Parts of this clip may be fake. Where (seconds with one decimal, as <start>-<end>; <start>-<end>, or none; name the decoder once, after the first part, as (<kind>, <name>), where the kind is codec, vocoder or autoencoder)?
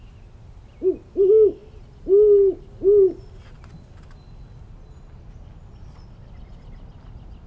none